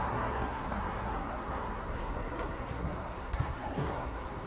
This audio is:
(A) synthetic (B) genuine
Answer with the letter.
A